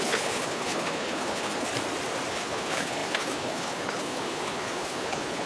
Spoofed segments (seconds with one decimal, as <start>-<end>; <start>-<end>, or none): 0.0-1.7; 2.3-5.5